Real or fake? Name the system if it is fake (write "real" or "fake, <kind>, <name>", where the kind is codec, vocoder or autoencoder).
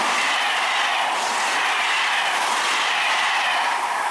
real